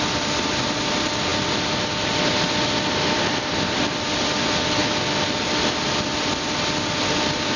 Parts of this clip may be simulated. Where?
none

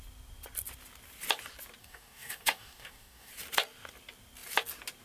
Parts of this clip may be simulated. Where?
1.8-3.3 (codec, DAC)

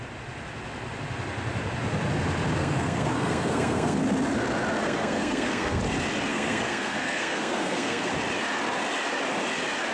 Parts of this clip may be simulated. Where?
2.6-4.0 (codec, SNAC); 4.8-5.8; 6.3-8.1

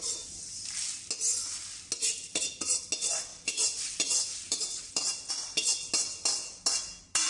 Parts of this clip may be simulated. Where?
3.3-5.3 (vocoder, BigVGAN v2)

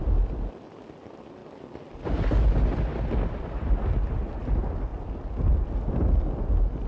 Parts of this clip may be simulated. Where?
none

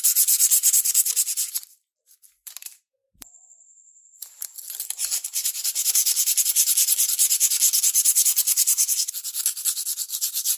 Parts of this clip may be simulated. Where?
none